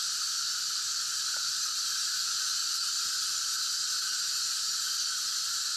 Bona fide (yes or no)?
yes